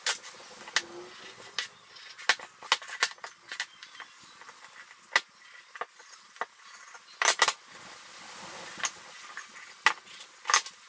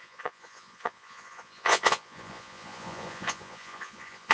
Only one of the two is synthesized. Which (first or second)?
second